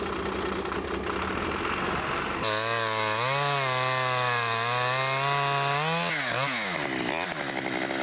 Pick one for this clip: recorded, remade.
recorded